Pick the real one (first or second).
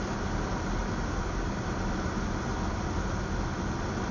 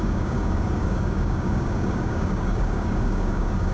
first